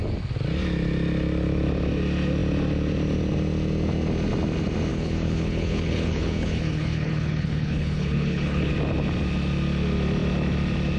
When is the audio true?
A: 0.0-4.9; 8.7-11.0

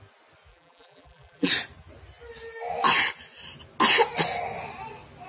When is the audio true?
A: 0.0-0.5; 1.5-5.3

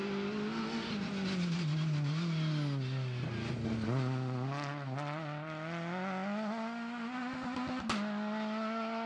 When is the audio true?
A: 0.0-9.1